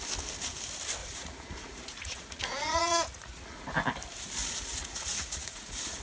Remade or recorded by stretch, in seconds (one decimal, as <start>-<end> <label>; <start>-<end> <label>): 0.0-1.0 recorded; 1.0-3.7 remade; 3.7-4.4 recorded; 4.4-6.0 remade